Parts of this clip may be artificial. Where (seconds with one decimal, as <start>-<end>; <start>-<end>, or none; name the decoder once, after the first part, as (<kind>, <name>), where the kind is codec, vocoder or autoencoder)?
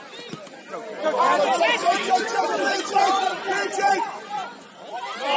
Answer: 1.8-4.7 (vocoder, Vocos)